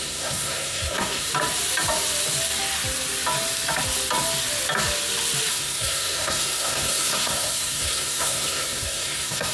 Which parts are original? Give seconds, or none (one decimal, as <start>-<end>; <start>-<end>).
1.3-5.5